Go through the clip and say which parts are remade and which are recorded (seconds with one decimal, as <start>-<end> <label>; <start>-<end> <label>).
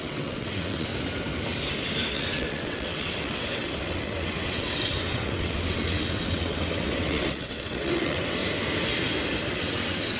0.0-0.9 remade; 0.9-2.1 recorded; 2.1-8.4 remade; 8.4-9.6 recorded; 9.6-10.2 remade